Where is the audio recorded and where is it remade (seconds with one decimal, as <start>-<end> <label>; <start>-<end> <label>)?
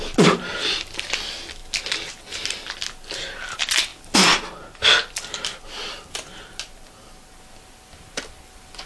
0.0-8.9 recorded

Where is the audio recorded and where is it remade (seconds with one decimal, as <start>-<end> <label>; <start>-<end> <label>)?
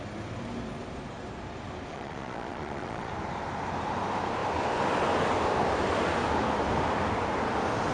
0.0-1.9 recorded; 1.9-3.1 remade; 3.1-7.9 recorded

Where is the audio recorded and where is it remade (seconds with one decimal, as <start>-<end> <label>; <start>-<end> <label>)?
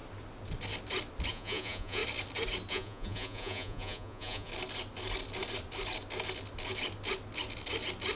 0.0-1.3 recorded; 1.3-2.0 remade; 2.0-2.7 recorded; 2.7-4.5 remade; 4.5-8.2 recorded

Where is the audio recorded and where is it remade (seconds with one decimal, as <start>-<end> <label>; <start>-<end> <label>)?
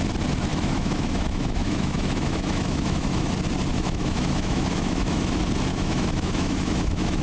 0.0-0.5 recorded; 0.5-3.3 remade; 3.3-3.7 recorded; 3.7-5.3 remade; 5.3-5.7 recorded; 5.7-7.2 remade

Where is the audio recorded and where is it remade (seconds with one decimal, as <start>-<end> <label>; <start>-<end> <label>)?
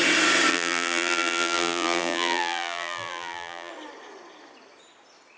0.0-0.5 recorded; 0.5-3.7 remade; 3.7-5.4 recorded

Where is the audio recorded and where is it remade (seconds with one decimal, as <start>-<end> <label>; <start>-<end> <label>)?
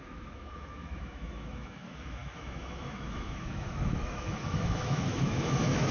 0.0-5.9 remade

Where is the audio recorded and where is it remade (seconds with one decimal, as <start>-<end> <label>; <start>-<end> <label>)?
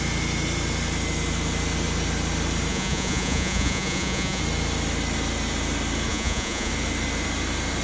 0.0-2.7 recorded; 2.7-4.4 remade; 4.4-6.1 recorded; 6.1-6.7 remade; 6.7-7.8 recorded